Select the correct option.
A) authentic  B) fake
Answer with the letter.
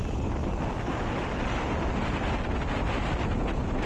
A